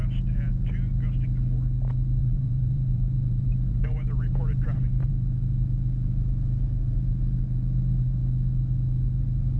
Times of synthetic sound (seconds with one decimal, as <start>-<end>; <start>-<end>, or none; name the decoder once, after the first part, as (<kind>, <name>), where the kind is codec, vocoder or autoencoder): 2.2-5.1 (vocoder, BigVGAN v2)